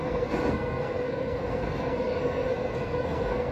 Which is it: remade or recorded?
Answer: remade